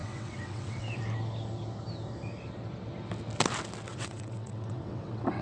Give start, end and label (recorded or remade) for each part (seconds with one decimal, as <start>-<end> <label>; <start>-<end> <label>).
0.0-1.0 remade; 1.0-3.9 recorded; 3.9-5.4 remade